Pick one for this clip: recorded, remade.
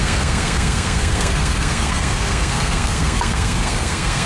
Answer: remade